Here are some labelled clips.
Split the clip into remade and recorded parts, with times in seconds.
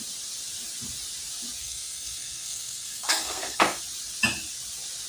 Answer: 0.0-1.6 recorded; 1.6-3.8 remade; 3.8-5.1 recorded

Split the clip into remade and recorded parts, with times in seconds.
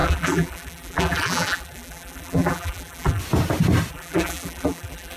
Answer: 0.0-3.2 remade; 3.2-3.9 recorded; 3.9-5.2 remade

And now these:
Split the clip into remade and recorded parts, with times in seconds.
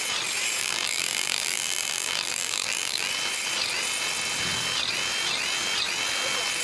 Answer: 0.0-0.6 recorded; 0.6-3.1 remade; 3.1-6.6 recorded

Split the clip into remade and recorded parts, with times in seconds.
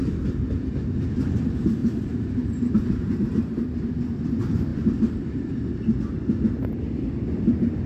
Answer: 0.0-1.8 recorded; 1.8-3.4 remade; 3.4-4.7 recorded; 4.7-6.0 remade; 6.0-7.9 recorded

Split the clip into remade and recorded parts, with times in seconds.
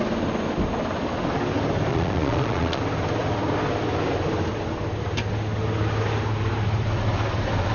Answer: 0.0-1.9 recorded; 1.9-2.8 remade; 2.8-7.7 recorded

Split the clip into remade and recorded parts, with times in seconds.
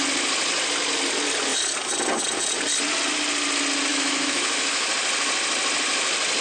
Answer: 0.0-3.9 recorded; 3.9-4.9 remade; 4.9-6.4 recorded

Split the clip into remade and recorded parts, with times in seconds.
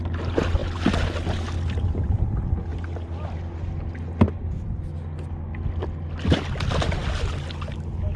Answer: 0.0-8.2 recorded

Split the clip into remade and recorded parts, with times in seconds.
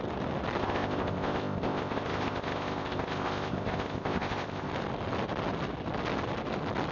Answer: 0.0-0.6 recorded; 0.6-4.7 remade; 4.7-6.9 recorded